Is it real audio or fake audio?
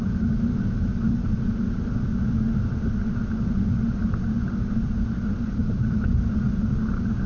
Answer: real